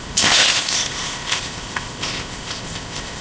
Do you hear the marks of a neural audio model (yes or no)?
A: yes